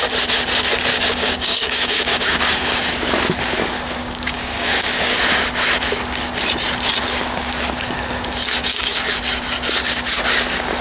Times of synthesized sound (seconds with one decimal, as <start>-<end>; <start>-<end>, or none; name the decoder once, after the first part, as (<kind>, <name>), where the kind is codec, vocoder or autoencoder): 0.9-2.4 (codec, DAC); 4.0-5.1; 8.7-9.2